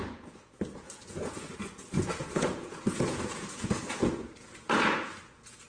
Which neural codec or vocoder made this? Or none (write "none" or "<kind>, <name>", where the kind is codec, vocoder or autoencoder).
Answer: vocoder, Vocos